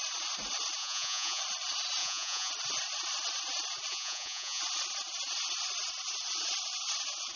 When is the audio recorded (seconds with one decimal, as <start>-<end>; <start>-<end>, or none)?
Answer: 0.0-0.8; 1.4-2.0; 2.5-3.9; 4.6-7.4